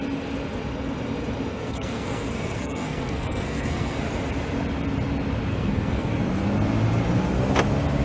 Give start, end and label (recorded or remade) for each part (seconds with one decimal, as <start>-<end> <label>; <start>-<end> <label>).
0.0-1.5 recorded; 1.5-4.0 remade; 4.0-5.5 recorded; 5.5-6.1 remade; 6.1-8.0 recorded